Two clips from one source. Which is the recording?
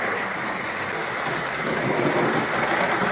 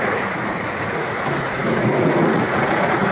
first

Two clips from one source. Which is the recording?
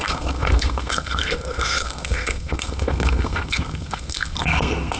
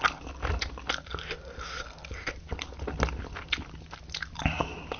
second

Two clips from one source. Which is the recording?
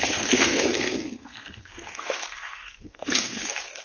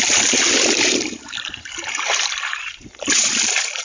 second